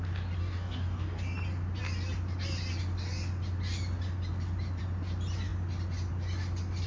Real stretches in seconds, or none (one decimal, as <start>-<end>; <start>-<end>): 0.0-0.4; 1.2-6.9